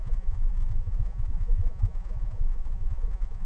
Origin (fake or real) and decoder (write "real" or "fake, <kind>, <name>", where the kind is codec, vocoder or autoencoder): fake, vocoder, Vocos